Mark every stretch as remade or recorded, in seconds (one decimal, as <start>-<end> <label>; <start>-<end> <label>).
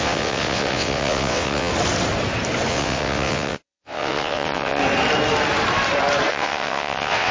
0.0-1.7 remade; 1.7-2.7 recorded; 2.7-4.8 remade; 4.8-6.3 recorded; 6.3-7.3 remade